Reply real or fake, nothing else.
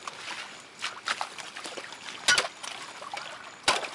real